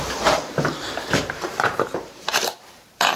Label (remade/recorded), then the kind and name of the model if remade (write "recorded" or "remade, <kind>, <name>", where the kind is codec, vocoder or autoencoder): remade, vocoder, BigVGAN v2